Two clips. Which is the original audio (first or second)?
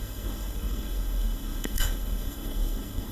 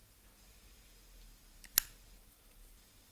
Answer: second